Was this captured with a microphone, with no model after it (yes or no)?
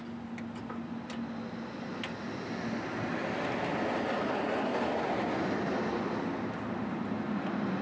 yes